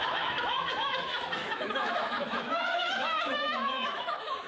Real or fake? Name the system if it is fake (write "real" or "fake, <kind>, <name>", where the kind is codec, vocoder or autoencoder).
fake, autoencoder, DAC-VAE